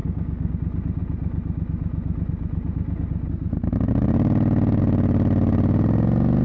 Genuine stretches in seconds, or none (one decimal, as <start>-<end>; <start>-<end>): 0.5-6.4